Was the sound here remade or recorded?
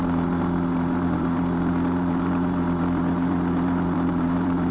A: remade